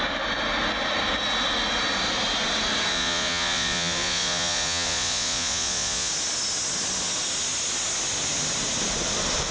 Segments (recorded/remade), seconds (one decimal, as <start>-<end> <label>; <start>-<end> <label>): 0.0-2.9 recorded; 2.9-6.1 remade; 6.1-9.5 recorded